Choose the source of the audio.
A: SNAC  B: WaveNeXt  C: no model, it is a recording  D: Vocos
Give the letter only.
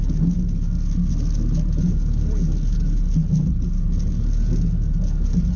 C